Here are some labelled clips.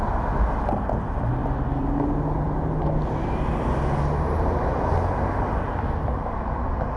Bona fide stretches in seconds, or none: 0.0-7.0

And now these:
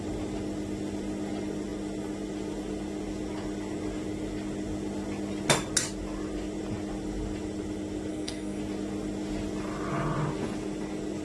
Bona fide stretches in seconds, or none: 0.0-8.1; 8.6-11.2

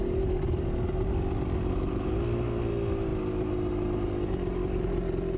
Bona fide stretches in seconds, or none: 0.0-5.4

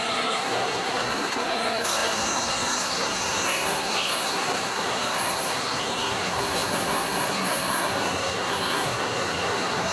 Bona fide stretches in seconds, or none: none

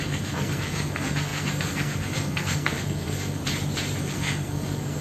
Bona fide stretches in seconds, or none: 3.4-4.0

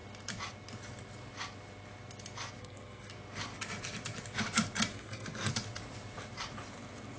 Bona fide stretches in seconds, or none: 0.0-2.6; 3.1-4.9; 5.5-7.2

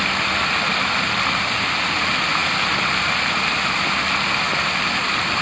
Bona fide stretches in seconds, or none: 0.0-5.4